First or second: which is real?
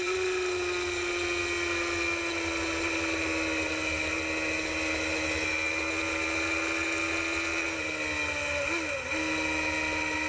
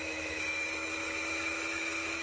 first